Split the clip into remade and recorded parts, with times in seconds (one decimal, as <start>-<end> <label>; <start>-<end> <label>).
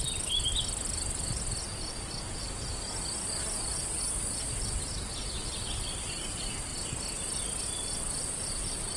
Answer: 0.0-9.0 recorded